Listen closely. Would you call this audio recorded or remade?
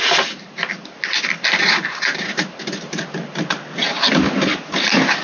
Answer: recorded